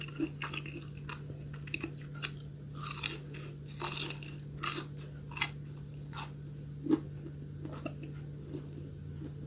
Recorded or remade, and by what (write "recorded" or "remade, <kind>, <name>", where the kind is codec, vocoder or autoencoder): recorded